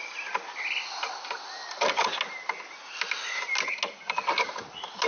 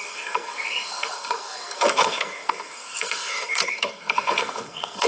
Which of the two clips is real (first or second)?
first